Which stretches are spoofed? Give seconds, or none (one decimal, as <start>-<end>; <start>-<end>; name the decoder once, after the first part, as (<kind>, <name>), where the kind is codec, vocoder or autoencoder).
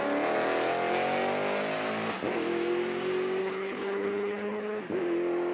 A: 3.4-4.8 (codec, HILCodec)